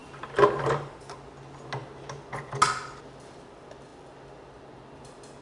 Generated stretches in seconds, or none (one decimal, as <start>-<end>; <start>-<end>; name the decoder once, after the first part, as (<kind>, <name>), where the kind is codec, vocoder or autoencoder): none